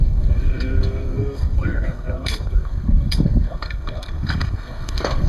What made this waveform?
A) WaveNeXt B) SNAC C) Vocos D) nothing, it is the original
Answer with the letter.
B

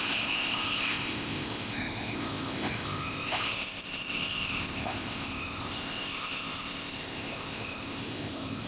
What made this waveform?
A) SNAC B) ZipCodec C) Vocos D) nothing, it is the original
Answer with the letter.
B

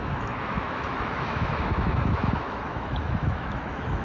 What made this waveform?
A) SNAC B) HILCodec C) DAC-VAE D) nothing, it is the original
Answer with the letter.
C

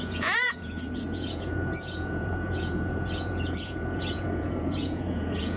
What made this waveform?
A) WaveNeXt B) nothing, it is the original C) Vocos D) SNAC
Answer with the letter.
C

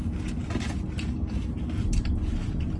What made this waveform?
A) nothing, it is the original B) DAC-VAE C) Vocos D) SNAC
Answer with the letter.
A